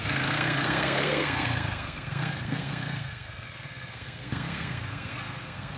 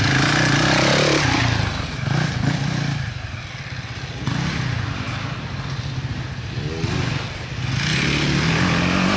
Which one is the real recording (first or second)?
second